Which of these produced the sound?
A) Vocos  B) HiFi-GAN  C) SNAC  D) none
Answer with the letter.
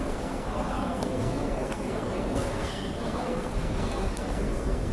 C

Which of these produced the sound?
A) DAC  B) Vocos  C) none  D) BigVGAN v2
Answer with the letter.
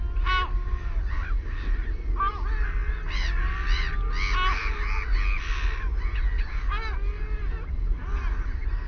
C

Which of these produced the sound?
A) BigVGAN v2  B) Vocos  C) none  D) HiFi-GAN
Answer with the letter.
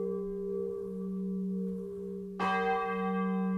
C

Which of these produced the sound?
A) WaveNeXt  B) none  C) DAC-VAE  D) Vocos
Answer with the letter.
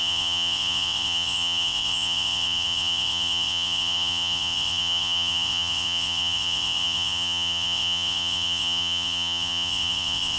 A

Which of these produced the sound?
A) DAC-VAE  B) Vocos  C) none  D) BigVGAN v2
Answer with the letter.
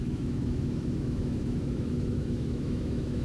A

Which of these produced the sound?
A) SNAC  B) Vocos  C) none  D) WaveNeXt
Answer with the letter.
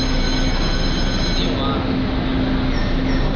C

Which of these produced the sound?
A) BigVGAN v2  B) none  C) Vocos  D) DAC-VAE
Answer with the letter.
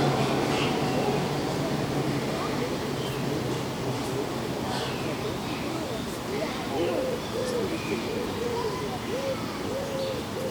B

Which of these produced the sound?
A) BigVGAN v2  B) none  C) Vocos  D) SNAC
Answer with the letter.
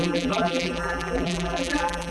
A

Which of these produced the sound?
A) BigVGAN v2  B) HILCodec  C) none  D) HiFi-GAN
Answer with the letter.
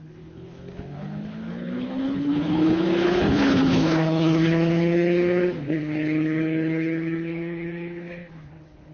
B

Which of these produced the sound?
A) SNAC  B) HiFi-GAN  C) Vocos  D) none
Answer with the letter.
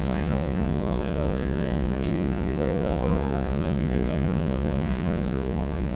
C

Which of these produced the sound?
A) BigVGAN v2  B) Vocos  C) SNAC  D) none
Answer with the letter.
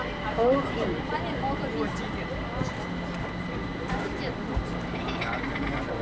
D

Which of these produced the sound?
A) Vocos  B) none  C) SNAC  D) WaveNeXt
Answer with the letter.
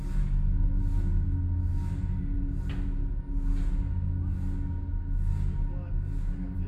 B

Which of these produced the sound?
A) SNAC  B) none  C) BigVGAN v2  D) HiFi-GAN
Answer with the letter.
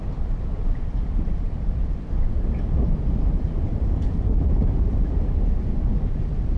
C